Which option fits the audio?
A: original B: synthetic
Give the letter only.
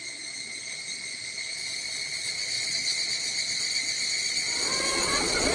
B